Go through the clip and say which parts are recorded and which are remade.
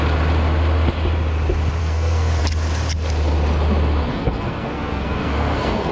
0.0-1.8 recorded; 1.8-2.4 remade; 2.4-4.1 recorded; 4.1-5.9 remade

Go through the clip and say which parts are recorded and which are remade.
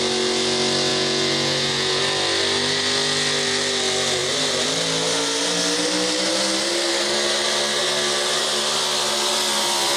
0.0-0.9 recorded; 0.9-2.0 remade; 2.0-10.0 recorded